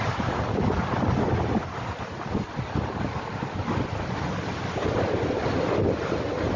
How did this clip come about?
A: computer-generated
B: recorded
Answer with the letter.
B